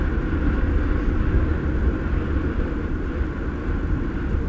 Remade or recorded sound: recorded